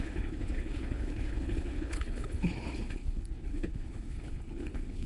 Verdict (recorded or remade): remade